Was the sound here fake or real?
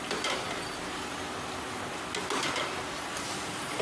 real